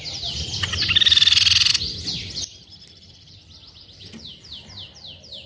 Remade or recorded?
recorded